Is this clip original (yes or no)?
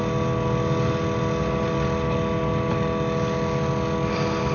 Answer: yes